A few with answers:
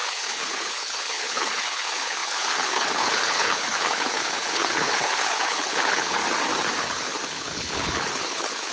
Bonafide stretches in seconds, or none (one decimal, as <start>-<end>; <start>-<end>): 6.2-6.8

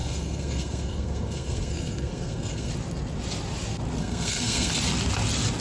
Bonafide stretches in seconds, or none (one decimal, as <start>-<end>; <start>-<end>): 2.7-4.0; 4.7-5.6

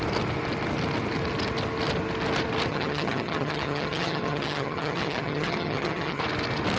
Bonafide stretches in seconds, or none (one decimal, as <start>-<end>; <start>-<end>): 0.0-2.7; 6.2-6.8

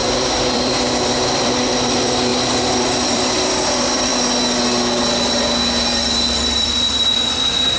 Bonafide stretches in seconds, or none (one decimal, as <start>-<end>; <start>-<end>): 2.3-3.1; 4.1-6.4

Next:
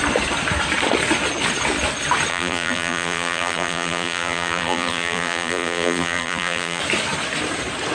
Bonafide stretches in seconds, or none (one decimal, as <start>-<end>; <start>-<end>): 0.0-2.3; 6.8-7.9